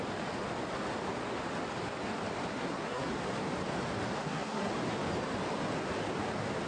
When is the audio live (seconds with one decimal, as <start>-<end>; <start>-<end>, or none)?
0.0-2.5; 3.1-4.2; 4.7-6.7